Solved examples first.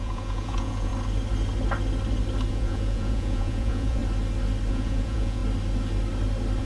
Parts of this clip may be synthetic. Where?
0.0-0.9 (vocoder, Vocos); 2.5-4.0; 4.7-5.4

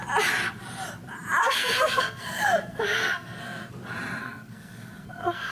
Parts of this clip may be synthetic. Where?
1.4-3.7 (codec, SNAC); 4.2-5.5

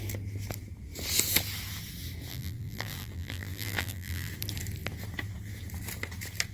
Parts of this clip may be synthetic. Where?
2.3-4.3 (vocoder, BigVGAN v2)